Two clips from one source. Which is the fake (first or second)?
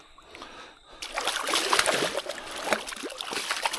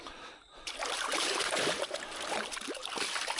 second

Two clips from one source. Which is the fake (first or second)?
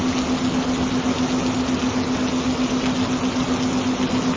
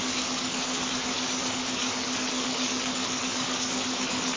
second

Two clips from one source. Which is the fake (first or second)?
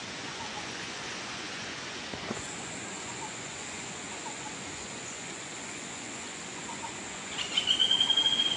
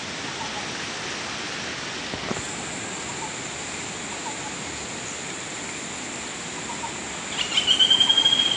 first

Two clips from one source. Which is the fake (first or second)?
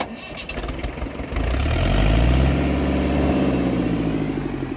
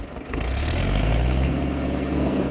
second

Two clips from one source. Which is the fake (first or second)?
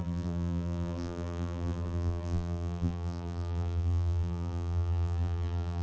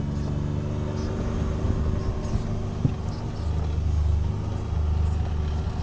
first